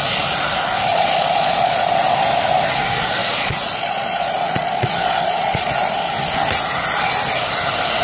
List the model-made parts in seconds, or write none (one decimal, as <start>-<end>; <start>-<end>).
0.9-1.9; 3.2-5.7